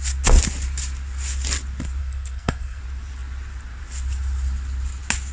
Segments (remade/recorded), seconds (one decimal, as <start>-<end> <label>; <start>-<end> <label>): 0.0-2.0 recorded; 2.0-2.8 remade; 2.8-5.3 recorded